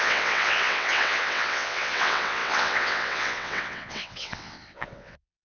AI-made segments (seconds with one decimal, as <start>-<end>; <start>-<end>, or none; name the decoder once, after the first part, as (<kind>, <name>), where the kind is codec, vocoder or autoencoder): 0.0-5.4 (vocoder, WaveNeXt)